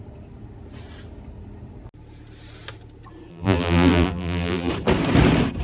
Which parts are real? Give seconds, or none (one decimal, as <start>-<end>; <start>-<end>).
0.0-3.3; 4.7-5.6